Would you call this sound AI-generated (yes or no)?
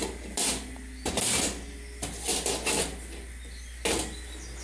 no